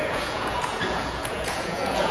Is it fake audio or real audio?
fake